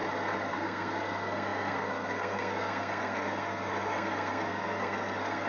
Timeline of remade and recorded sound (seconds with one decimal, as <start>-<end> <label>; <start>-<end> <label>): 0.0-0.5 recorded; 0.5-5.5 remade

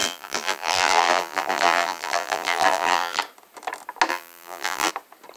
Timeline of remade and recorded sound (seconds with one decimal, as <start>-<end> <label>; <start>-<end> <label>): 0.0-3.2 remade; 3.2-4.1 recorded; 4.1-4.9 remade; 4.9-5.4 recorded

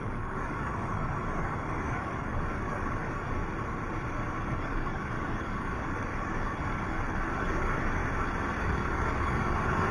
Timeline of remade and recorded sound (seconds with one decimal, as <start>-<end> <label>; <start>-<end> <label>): 0.0-3.4 remade; 3.4-4.1 recorded; 4.1-8.0 remade; 8.0-8.6 recorded; 8.6-9.9 remade

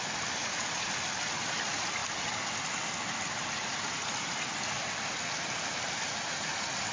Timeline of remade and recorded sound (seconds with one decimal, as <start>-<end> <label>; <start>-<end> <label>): 0.0-0.4 recorded; 0.4-0.9 remade; 0.9-6.9 recorded